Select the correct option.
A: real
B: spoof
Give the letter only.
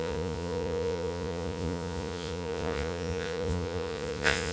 B